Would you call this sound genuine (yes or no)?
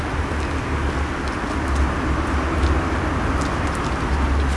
yes